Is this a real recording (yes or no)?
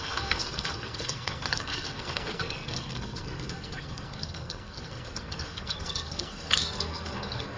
no